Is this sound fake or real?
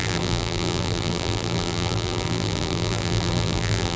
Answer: fake